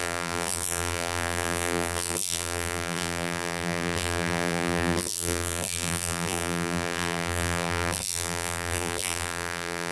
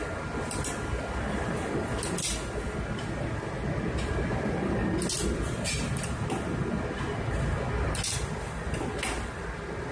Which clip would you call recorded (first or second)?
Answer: second